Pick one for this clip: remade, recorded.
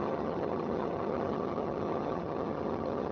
remade